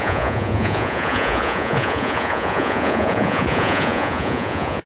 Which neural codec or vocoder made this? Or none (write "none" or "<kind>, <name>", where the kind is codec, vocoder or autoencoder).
vocoder, Vocos